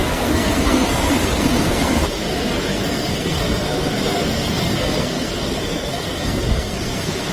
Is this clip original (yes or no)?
no